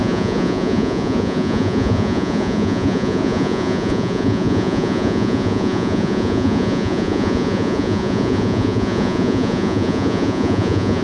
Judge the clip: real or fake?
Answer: fake